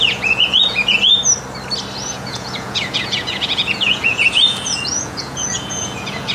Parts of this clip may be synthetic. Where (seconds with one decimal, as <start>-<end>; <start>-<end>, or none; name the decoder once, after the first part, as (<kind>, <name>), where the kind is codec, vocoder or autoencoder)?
0.0-1.1 (vocoder, Vocos); 2.1-6.3